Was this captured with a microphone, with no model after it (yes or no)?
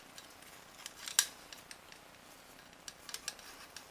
yes